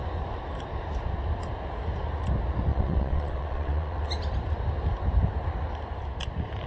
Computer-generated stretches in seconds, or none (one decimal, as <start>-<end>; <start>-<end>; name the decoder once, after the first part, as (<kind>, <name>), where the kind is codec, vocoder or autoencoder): 2.7-4.0 (vocoder, WaveNeXt)